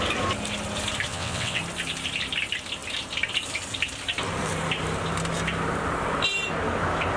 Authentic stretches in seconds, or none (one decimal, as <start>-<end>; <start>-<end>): 0.0-1.1; 1.6-7.2

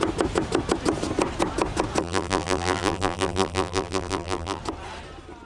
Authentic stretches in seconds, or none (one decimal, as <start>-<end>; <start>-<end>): 0.0-2.0; 4.6-5.5

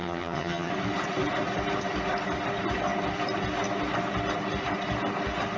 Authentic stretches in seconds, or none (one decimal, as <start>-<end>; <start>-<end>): 0.7-5.6

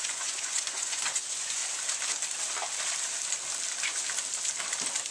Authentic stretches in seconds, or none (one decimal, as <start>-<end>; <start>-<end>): 1.6-5.1

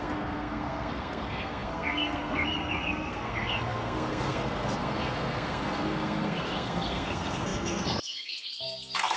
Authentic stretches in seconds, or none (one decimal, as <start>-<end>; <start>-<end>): none

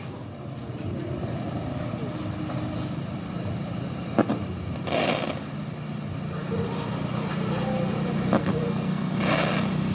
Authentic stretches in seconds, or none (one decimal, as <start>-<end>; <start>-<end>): 0.0-8.4; 9.2-9.9

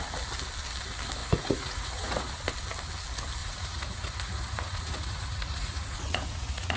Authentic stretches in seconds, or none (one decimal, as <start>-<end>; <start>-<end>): 0.0-1.2; 2.3-3.4

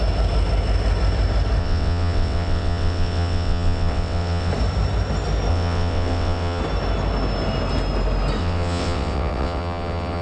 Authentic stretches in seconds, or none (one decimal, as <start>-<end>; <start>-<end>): 0.0-1.6; 4.5-5.5; 6.6-8.4